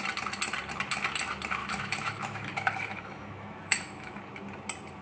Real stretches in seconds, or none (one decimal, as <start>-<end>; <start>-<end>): 0.0-1.6; 4.2-5.0